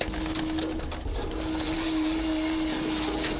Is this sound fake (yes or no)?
no